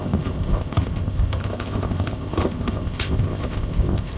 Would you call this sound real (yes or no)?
no